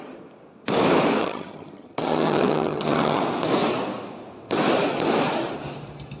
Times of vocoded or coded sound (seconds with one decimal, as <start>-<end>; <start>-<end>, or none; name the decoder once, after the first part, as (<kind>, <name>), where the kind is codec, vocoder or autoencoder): 1.2-3.2 (vocoder, HiFi-GAN)

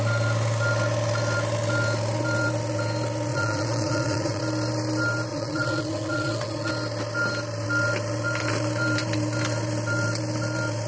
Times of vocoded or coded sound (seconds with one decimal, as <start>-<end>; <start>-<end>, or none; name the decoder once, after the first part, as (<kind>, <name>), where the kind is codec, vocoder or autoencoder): 3.3-4.4 (vocoder, Vocos); 5.3-6.7

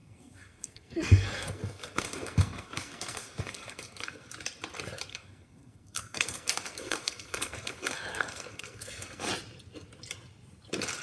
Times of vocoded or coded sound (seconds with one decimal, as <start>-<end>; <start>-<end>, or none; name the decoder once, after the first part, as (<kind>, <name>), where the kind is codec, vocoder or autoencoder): 0.0-4.3 (codec, SNAC); 5.1-9.3

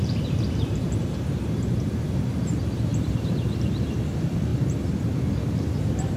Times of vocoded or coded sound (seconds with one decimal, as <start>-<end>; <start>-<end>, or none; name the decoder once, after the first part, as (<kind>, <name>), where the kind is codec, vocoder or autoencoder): 0.0-1.0 (vocoder, BigVGAN v2); 1.8-2.9; 3.6-4.5; 5.3-6.2

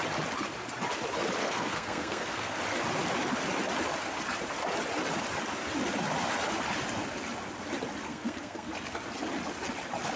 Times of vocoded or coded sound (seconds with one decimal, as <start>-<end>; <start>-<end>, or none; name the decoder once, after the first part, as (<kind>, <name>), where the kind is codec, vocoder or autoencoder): 1.4-2.6 (codec, SNAC); 8.1-8.7